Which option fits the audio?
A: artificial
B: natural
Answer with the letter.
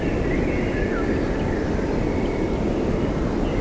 B